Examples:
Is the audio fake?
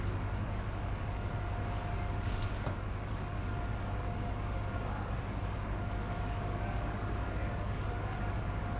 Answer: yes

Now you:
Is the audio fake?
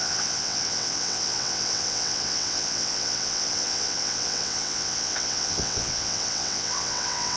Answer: yes